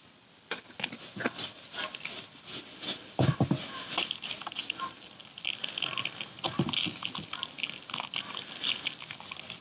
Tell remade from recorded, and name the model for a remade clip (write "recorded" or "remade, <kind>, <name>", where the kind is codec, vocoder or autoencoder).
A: recorded